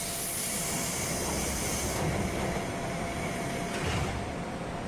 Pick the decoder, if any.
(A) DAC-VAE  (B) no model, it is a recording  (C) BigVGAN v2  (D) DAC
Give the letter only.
B